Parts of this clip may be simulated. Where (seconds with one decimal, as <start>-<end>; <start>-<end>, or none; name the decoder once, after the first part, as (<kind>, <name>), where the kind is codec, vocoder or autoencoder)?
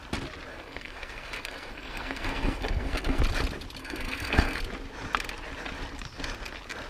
0.5-3.2 (codec, SNAC); 3.8-4.6